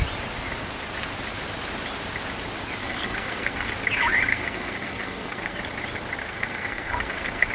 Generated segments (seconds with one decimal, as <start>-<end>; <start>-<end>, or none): 2.8-3.7; 4.3-5.6; 6.2-7.5